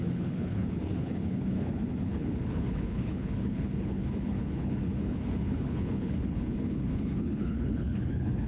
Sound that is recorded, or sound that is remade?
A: remade